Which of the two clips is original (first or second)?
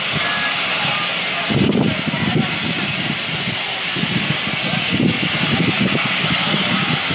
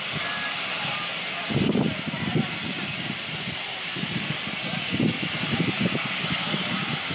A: first